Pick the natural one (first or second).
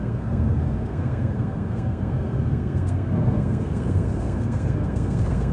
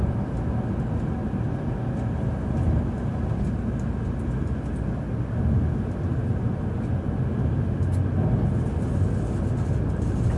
second